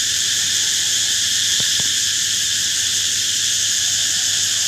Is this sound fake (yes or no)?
yes